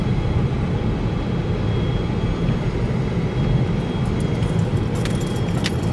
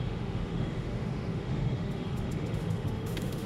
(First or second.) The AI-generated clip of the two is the second